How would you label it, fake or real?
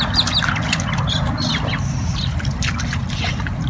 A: real